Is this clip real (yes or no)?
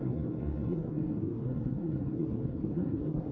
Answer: no